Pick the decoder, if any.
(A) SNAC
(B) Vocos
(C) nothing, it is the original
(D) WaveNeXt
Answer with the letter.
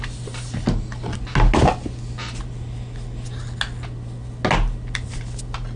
C